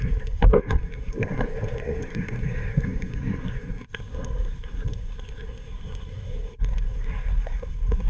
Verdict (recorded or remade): remade